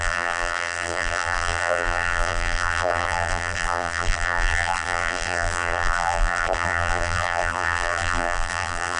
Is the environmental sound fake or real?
fake